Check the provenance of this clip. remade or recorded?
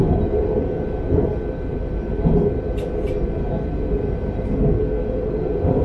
recorded